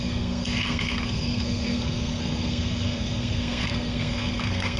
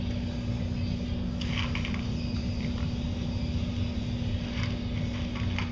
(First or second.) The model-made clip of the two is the first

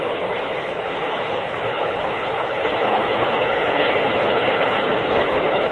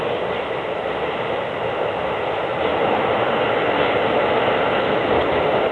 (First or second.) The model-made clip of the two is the first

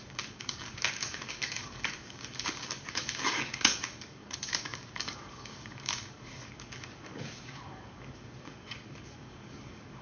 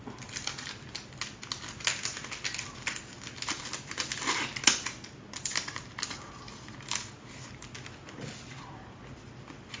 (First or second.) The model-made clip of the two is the first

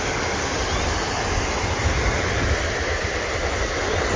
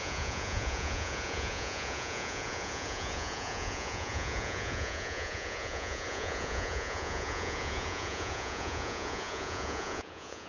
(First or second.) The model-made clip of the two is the second